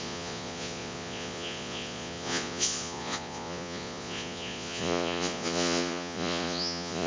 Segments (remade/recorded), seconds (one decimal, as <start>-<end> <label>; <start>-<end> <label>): 0.0-7.1 remade